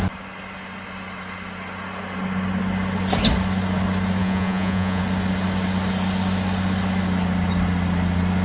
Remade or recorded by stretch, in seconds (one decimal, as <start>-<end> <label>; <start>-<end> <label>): 0.0-4.2 recorded; 4.2-5.0 remade; 5.0-8.4 recorded